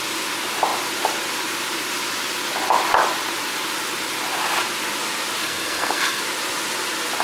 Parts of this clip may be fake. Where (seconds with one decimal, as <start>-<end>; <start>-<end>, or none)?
5.4-6.2